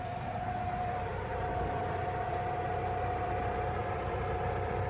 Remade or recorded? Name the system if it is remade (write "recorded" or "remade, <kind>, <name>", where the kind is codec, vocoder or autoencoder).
remade, vocoder, BigVGAN v2